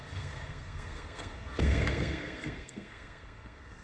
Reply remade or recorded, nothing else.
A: remade